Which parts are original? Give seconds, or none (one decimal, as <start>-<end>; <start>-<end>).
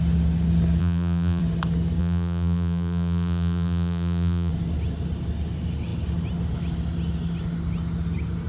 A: 0.0-0.8; 1.4-2.0; 4.5-8.5